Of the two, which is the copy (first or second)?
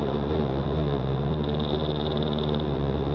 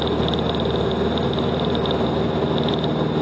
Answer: first